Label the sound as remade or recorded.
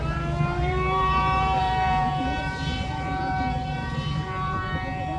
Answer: remade